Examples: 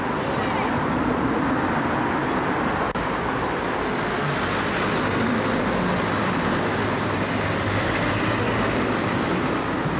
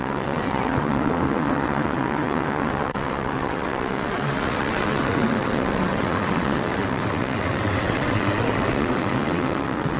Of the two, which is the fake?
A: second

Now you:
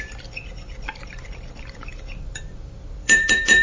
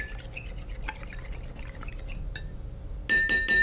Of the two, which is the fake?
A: first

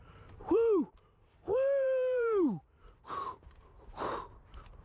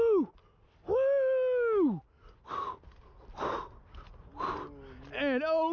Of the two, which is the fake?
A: first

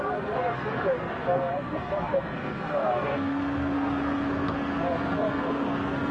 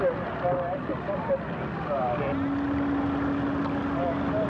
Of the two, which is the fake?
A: first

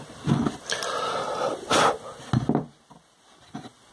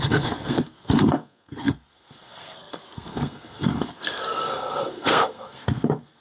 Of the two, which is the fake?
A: second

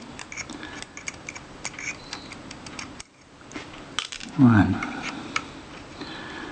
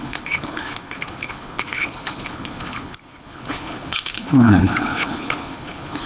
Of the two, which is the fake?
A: second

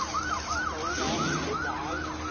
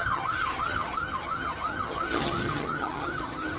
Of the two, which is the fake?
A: second